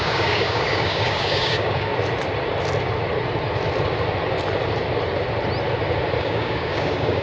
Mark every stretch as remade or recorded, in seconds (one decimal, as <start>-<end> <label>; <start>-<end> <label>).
0.0-1.9 remade; 1.9-6.2 recorded; 6.2-7.2 remade